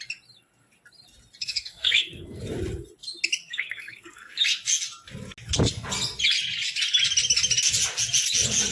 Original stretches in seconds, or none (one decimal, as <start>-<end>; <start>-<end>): 0.0-1.4; 2.4-3.4; 4.4-8.7